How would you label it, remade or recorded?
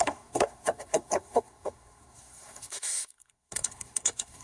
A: remade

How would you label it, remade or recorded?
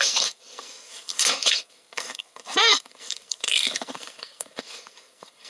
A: remade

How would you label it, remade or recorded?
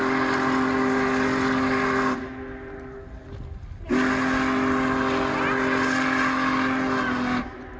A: recorded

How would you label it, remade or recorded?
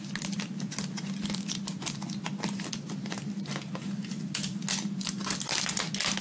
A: recorded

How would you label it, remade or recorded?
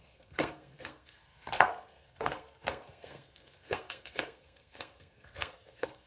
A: remade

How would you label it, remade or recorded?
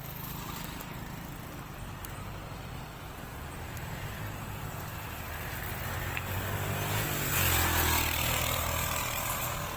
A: recorded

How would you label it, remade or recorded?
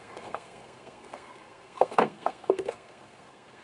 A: remade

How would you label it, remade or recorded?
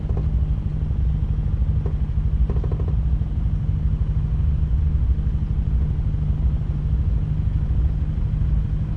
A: recorded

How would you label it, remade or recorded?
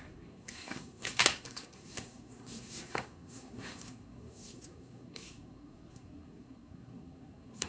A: remade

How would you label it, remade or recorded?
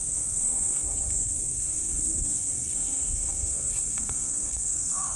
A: remade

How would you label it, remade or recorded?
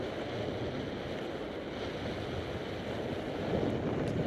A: recorded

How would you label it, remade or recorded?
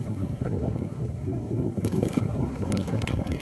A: remade